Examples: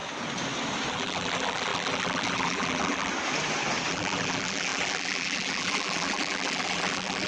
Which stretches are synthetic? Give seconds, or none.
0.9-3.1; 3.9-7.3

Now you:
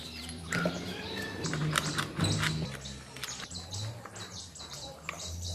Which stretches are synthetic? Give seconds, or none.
0.0-1.6; 3.5-5.5

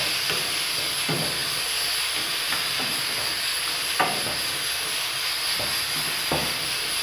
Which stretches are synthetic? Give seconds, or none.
none

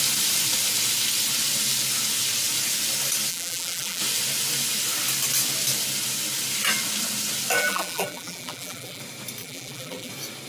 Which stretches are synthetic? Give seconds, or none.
3.3-4.0; 7.6-9.0; 9.4-10.1